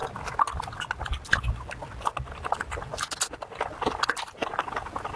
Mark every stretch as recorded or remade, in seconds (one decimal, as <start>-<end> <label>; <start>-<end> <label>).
0.0-5.2 recorded